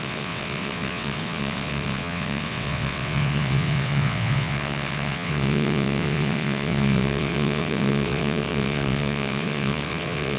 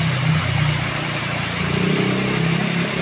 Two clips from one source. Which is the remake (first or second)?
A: first